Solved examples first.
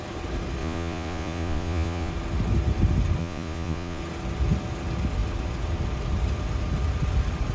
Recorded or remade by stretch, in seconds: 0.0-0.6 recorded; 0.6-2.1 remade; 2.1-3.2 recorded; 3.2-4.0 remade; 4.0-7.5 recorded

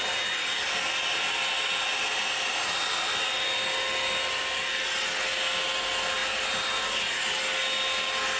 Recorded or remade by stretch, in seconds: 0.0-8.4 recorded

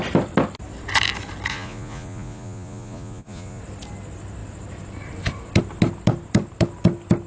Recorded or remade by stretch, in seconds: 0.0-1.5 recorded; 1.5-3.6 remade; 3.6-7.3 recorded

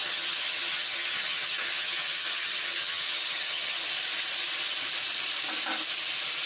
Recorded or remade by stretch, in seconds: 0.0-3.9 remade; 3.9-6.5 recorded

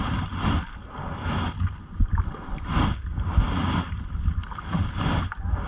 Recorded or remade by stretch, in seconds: 0.0-5.7 recorded